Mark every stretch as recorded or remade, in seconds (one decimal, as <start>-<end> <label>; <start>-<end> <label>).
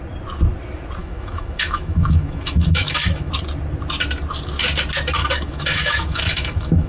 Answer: 0.0-1.0 recorded; 1.0-3.3 remade; 3.3-5.2 recorded; 5.2-6.9 remade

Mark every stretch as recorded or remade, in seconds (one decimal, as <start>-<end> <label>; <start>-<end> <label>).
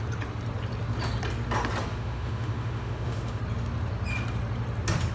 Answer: 0.0-1.9 recorded; 1.9-3.4 remade; 3.4-5.1 recorded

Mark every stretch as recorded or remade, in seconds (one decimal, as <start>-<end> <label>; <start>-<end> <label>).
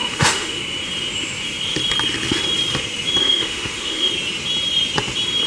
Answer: 0.0-0.6 remade; 0.6-3.2 recorded; 3.2-4.1 remade; 4.1-5.5 recorded